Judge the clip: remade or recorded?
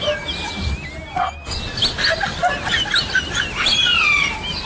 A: recorded